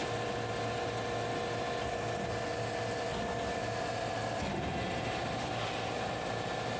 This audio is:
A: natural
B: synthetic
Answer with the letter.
A